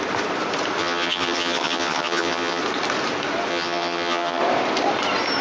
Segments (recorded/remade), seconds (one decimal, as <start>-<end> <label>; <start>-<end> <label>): 0.0-0.8 recorded; 0.8-2.6 remade; 2.6-3.5 recorded; 3.5-4.4 remade; 4.4-5.4 recorded